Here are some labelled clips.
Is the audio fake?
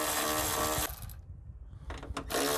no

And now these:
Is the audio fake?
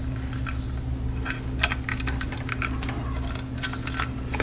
no